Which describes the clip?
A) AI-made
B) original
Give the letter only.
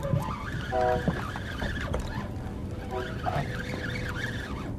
B